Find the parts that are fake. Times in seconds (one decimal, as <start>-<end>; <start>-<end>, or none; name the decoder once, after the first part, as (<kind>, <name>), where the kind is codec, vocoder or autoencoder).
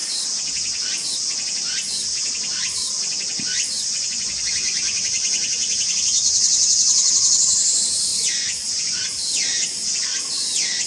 3.7-5.0 (vocoder, Vocos); 8.1-9.0